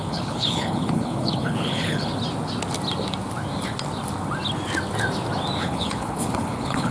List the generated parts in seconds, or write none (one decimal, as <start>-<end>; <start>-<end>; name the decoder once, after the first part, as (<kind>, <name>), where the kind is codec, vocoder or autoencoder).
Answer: 0.0-2.1 (codec, HILCodec); 5.6-6.9